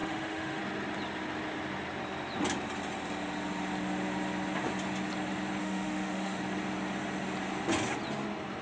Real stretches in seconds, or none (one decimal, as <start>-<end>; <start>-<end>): 0.6-5.6; 6.4-8.6